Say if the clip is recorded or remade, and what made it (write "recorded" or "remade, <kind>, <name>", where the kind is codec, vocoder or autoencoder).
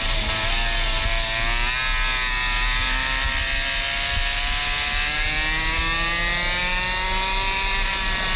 recorded